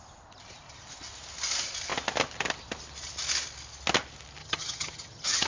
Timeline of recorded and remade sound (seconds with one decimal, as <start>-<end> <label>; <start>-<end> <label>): 0.0-4.4 recorded; 4.4-5.5 remade